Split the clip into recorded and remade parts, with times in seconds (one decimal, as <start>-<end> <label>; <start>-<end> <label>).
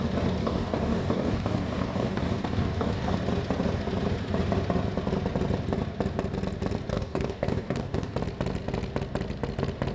0.0-0.4 recorded; 0.4-3.1 remade; 3.1-6.9 recorded; 6.9-8.2 remade; 8.2-9.9 recorded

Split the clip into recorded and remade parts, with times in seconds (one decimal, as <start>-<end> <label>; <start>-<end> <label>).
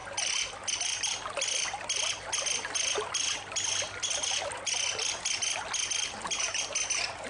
0.0-7.3 recorded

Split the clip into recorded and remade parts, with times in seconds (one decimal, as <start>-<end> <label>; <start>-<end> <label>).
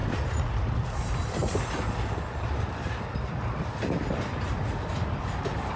0.0-0.6 recorded; 0.6-1.4 remade; 1.4-4.9 recorded; 4.9-5.8 remade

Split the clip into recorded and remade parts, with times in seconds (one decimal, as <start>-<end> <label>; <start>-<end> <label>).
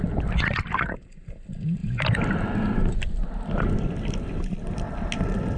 0.0-5.6 recorded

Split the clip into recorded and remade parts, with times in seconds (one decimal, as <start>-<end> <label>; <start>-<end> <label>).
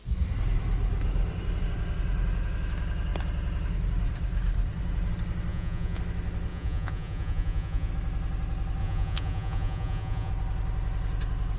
0.0-5.5 recorded; 5.5-6.0 remade; 6.0-6.5 recorded; 6.5-7.9 remade; 7.9-8.8 recorded; 8.8-10.3 remade; 10.3-11.6 recorded